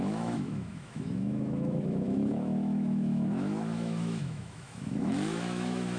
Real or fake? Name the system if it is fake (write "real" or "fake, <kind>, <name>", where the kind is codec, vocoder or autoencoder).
fake, autoencoder, DAC-VAE